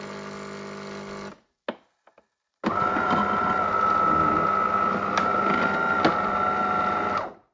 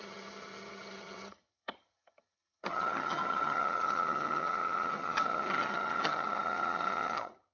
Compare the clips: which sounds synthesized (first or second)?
second